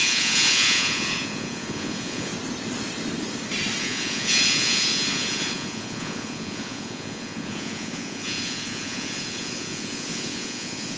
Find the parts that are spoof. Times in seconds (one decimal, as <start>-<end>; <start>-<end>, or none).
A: 0.0-2.3; 3.8-11.0